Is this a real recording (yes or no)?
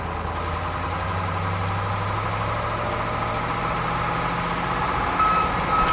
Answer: yes